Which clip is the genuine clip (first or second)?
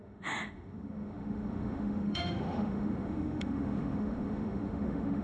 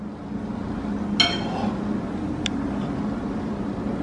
second